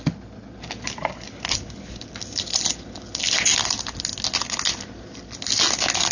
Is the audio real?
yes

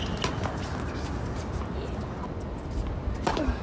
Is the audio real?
yes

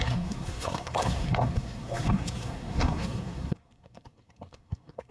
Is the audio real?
no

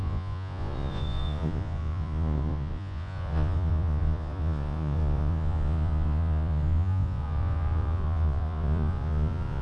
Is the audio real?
no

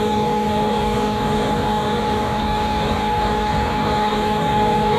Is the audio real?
no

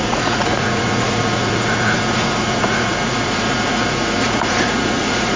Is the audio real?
no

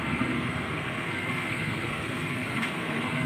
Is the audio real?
no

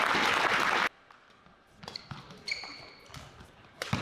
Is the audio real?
yes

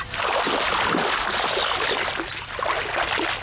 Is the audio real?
yes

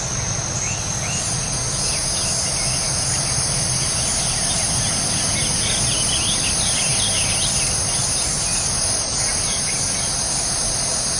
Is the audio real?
yes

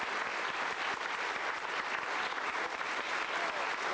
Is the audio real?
yes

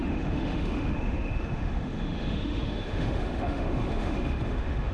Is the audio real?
no